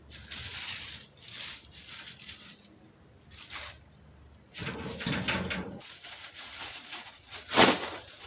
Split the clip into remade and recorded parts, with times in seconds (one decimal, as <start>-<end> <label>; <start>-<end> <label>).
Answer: 0.0-5.6 recorded; 5.6-8.3 remade

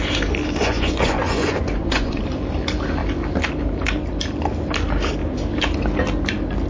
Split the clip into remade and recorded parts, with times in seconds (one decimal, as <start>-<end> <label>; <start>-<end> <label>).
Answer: 0.0-0.6 recorded; 0.6-2.2 remade; 2.2-6.7 recorded

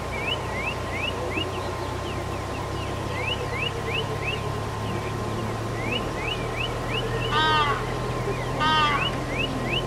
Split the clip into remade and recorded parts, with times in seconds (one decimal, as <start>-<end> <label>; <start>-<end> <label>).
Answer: 0.0-9.9 recorded

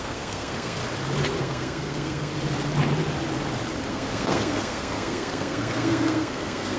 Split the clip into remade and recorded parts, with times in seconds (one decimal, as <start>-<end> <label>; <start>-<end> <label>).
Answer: 0.0-0.8 remade; 0.8-1.4 recorded; 1.4-2.3 remade; 2.3-3.9 recorded; 3.9-6.8 remade

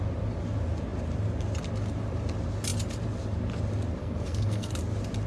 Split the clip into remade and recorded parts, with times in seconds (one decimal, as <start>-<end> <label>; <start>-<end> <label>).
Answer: 0.0-4.0 recorded; 4.0-4.7 remade; 4.7-5.3 recorded

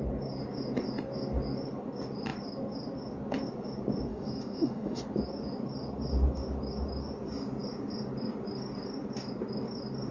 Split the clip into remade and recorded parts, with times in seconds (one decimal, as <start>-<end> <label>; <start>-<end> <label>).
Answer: 0.0-4.1 recorded; 4.1-5.0 remade; 5.0-10.1 recorded

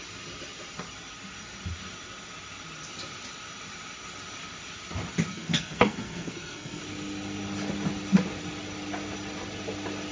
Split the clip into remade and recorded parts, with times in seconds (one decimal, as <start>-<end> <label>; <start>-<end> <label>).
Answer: 0.0-5.3 recorded; 5.3-6.8 remade; 6.8-10.1 recorded